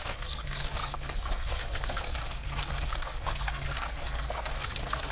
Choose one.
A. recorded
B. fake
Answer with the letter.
B